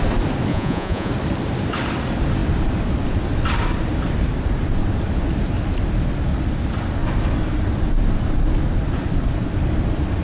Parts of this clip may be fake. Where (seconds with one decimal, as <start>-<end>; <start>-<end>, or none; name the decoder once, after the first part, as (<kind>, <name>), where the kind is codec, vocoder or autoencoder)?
0.5-1.1 (vocoder, Vocos)

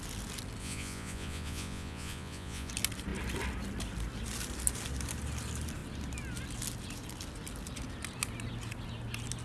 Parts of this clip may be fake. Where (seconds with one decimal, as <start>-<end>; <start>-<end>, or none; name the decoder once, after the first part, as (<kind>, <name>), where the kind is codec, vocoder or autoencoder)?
0.6-2.7 (vocoder, Vocos)